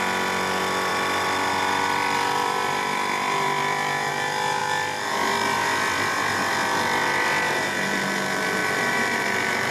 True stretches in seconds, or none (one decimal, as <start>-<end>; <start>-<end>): 0.0-0.9; 4.1-4.6; 6.5-8.6